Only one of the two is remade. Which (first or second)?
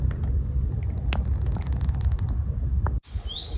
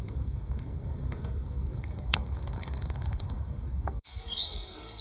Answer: second